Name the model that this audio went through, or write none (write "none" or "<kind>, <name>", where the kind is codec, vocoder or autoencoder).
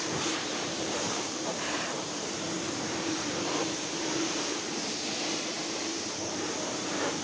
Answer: vocoder, BigVGAN v2